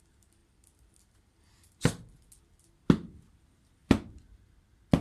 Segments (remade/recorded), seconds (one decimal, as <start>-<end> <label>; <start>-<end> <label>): 0.0-5.0 recorded